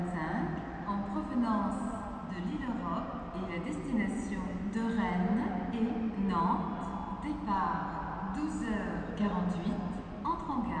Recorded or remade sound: recorded